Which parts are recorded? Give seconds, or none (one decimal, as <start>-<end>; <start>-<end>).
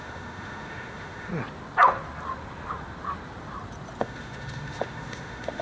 1.3-4.0